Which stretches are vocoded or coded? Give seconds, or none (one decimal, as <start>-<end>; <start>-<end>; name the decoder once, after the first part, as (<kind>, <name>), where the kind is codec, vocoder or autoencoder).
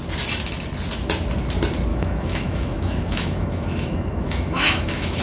1.9-5.2 (autoencoder, DAC-VAE)